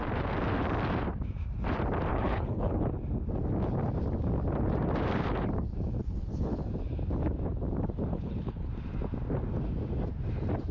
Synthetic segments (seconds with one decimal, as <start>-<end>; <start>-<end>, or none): 2.1-2.8; 6.0-6.6; 8.1-8.7